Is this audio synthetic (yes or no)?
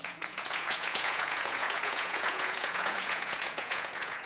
yes